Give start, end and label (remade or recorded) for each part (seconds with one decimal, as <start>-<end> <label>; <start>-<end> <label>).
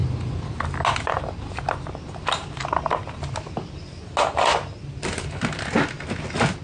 0.0-6.6 recorded